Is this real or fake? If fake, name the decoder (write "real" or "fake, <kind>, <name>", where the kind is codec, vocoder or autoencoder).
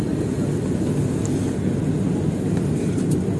real